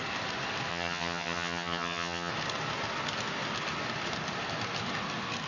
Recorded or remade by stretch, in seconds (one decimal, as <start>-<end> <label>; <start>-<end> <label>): 0.0-0.7 recorded; 0.7-2.3 remade; 2.3-5.5 recorded